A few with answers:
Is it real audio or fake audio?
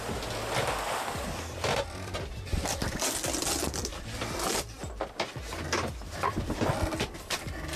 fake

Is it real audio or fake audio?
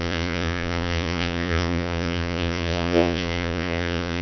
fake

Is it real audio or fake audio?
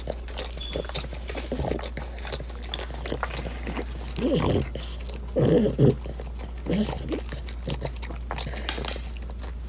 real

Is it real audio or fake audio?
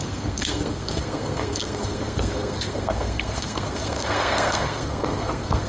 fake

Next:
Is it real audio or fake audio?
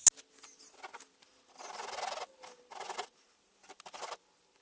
real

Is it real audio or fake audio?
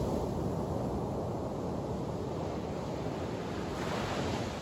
real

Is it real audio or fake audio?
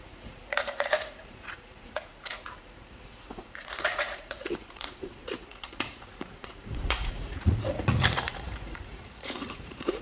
fake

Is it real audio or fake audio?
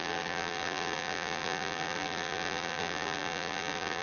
fake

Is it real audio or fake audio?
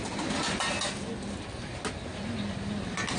real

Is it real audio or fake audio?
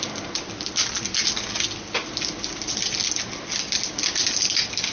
real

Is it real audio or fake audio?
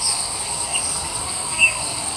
fake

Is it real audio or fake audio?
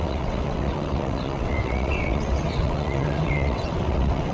fake